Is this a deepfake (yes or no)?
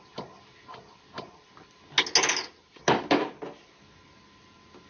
no